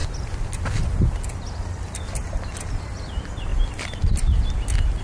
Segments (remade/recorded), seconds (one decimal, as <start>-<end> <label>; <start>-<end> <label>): 0.0-5.0 recorded